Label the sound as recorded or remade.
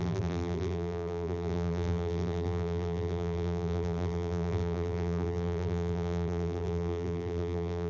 remade